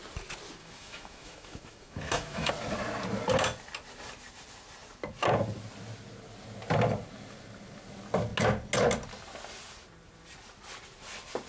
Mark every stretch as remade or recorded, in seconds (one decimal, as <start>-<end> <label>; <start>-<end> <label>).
0.0-0.6 recorded; 0.6-2.5 remade; 2.5-11.5 recorded